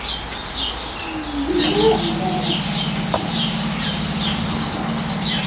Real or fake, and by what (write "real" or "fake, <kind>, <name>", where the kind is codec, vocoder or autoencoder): real